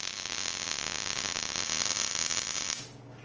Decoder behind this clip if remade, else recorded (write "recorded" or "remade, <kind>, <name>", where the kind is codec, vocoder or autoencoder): recorded